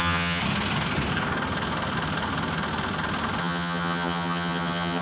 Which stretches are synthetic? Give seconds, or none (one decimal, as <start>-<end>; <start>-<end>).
0.0-0.4; 3.4-5.0

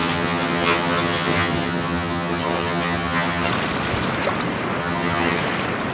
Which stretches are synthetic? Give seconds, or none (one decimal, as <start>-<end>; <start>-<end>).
0.0-3.5; 4.8-5.4

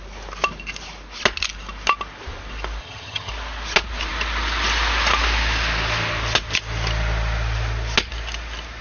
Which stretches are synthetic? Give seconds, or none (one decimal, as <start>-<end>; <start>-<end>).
2.8-3.3

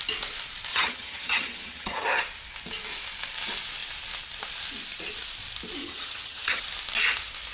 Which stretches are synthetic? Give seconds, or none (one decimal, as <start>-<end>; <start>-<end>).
0.7-2.2; 5.8-6.6